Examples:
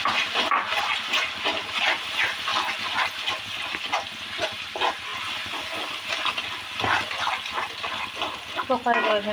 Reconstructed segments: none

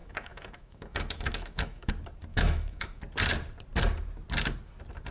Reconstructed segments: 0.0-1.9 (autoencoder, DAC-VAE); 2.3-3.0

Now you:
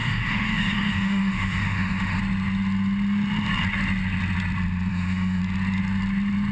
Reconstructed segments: 0.0-2.2 (autoencoder, DAC-VAE); 4.9-5.4

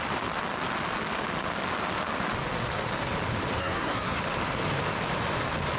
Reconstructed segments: 3.6-4.2 (codec, SNAC)

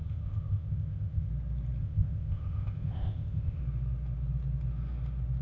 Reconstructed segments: 0.0-1.3 (codec, ZipCodec); 1.8-3.6

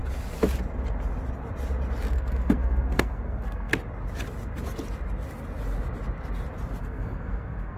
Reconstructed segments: 2.1-3.7 (codec, SNAC); 6.8-7.8